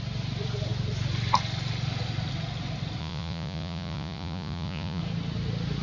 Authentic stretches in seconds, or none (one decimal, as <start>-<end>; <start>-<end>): 0.0-3.0; 5.0-5.8